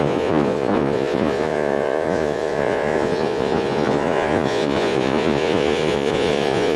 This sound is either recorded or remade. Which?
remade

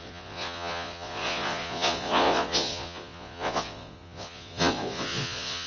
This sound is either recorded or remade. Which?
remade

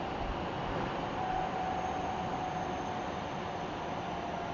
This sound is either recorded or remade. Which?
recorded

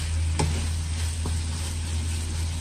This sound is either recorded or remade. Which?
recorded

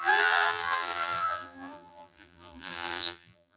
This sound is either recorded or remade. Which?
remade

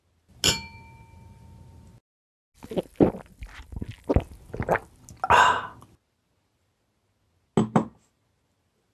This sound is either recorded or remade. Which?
recorded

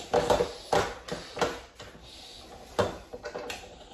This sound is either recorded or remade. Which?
recorded